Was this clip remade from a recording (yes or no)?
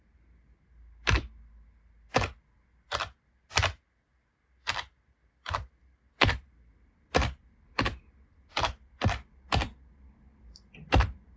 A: no